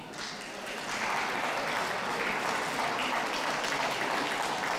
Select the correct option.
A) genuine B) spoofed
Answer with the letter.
A